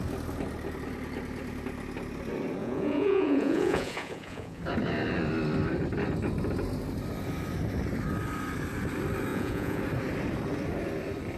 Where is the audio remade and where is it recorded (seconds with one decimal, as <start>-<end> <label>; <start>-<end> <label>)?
0.0-2.6 recorded; 2.6-4.6 remade; 4.6-9.3 recorded; 9.3-9.8 remade; 9.8-11.4 recorded